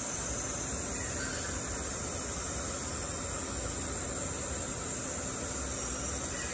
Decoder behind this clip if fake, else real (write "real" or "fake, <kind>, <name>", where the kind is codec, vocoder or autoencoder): real